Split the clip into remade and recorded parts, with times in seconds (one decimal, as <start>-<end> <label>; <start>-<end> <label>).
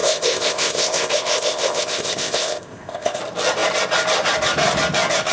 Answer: 0.0-3.2 remade; 3.2-5.3 recorded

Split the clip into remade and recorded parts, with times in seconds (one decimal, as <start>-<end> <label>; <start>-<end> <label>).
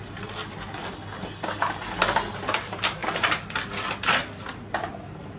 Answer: 0.0-5.4 recorded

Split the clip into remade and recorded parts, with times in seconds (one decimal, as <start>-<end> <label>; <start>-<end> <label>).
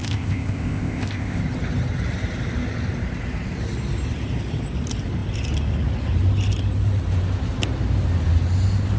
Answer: 0.0-1.4 remade; 1.4-9.0 recorded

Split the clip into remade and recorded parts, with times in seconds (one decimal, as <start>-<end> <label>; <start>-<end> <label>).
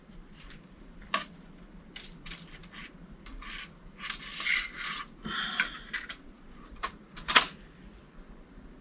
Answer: 0.0-8.8 recorded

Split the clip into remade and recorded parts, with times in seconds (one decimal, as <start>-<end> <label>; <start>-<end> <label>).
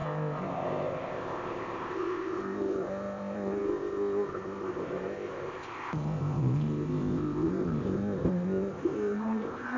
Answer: 0.0-9.8 remade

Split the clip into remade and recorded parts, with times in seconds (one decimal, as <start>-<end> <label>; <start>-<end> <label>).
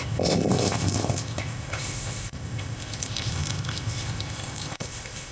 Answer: 0.0-5.3 remade